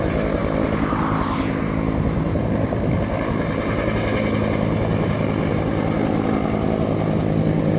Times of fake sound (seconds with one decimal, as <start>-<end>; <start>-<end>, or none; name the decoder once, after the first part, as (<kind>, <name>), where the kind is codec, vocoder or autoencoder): none